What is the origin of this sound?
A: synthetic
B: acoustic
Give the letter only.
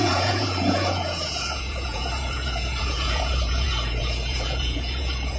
A